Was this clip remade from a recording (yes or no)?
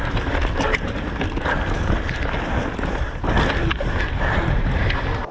no